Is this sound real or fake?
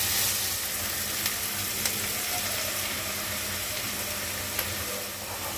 real